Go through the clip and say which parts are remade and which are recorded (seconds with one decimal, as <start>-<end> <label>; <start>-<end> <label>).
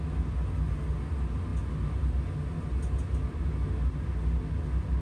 0.0-5.0 recorded